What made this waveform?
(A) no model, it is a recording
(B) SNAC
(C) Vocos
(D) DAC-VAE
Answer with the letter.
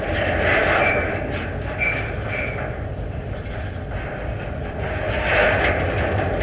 A